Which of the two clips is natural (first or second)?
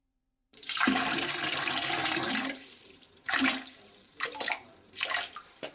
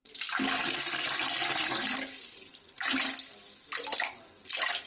second